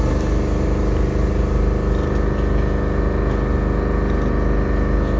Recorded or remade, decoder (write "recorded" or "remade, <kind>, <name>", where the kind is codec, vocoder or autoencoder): recorded